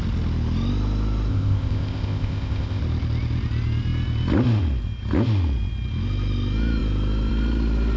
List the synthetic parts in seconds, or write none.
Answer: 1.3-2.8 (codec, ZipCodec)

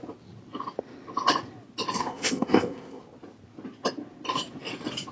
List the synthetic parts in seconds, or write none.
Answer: 2.0-3.0 (codec, ZipCodec)

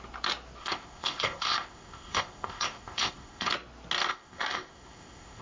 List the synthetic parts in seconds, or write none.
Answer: 0.6-3.5 (codec, ZipCodec); 4.1-5.4

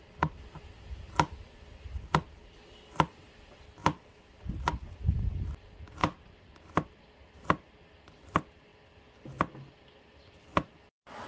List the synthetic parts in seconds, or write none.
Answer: none